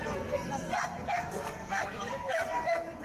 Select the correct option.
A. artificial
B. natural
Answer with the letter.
A